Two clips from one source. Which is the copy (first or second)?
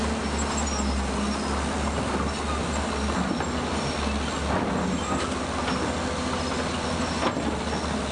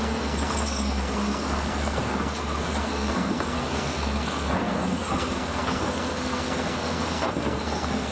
second